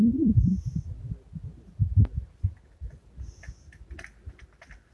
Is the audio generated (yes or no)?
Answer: no